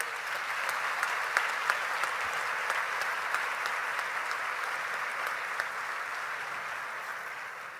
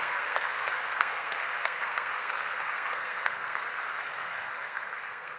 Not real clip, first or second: second